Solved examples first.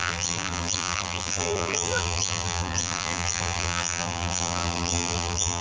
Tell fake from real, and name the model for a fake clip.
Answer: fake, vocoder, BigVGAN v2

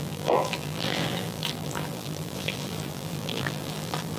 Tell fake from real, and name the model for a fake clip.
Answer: fake, vocoder, BigVGAN v2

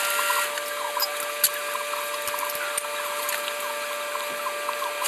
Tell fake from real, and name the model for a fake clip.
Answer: real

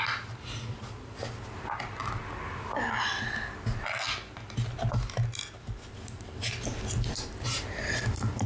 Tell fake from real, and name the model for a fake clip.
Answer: real